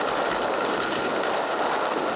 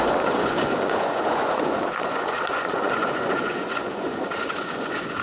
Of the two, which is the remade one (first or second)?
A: second